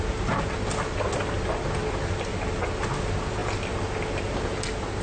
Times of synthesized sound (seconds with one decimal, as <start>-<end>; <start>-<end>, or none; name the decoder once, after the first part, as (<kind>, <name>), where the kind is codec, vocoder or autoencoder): none